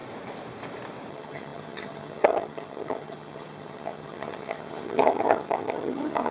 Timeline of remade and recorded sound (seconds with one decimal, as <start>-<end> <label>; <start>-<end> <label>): 0.0-1.1 recorded; 1.1-6.3 remade